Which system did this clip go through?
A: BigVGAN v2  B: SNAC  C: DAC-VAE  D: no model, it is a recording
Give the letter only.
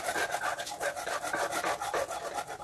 D